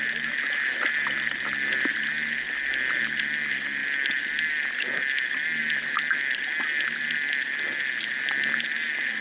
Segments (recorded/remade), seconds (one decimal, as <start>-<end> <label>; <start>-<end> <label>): 0.0-9.2 recorded